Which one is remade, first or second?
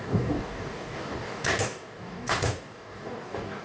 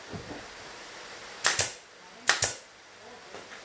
first